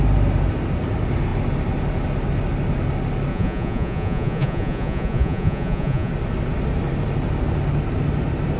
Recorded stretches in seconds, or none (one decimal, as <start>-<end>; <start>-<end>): 0.0-3.3; 6.1-8.6